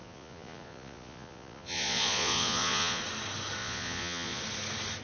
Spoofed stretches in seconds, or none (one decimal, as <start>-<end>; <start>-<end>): 0.0-3.0; 3.6-4.4